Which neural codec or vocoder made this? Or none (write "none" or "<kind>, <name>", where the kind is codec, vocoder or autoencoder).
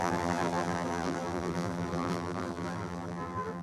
vocoder, BigVGAN v2